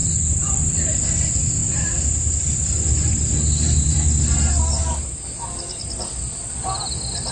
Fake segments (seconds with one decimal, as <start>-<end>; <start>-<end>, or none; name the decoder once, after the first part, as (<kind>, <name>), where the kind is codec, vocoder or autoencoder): 0.0-1.0 (vocoder, BigVGAN v2)